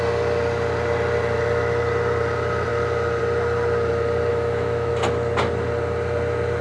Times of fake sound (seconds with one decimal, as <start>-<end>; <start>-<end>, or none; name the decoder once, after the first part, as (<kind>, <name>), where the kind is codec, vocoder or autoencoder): 4.3-4.9 (autoencoder, DAC-VAE)